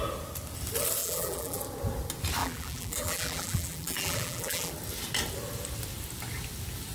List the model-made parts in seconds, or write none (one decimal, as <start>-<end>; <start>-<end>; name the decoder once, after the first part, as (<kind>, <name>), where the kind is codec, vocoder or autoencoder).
1.0-1.6 (vocoder, BigVGAN v2); 2.4-4.7